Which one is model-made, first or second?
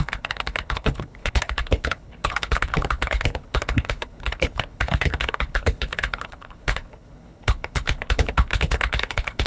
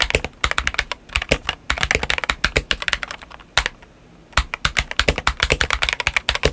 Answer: first